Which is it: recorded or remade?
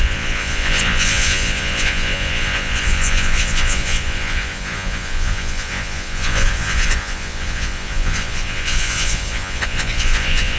remade